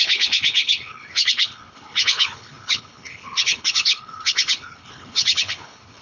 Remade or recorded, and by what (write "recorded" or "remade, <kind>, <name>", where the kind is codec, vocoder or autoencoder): remade, codec, HILCodec